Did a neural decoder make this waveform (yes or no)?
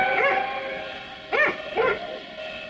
no